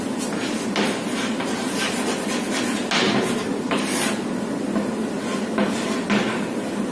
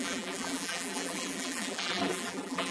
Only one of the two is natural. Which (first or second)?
first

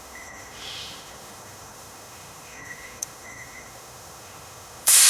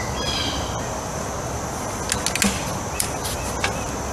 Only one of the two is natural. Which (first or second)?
second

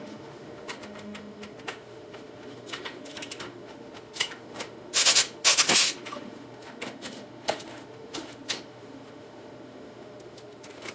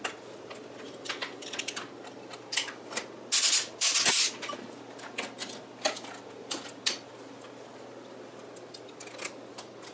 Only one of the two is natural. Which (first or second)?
second